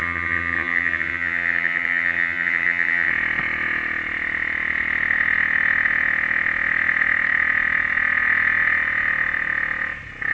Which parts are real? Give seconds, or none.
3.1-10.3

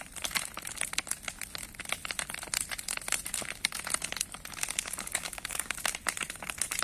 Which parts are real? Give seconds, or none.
0.0-4.8; 5.9-6.8

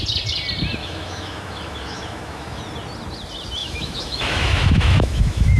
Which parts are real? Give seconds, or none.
0.0-0.8; 2.6-3.6

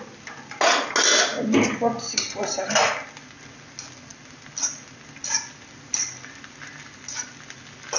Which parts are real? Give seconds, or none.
0.0-8.0

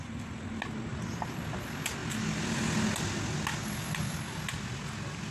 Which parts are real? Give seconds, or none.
0.0-0.9; 1.4-5.3